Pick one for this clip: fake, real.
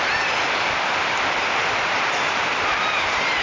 real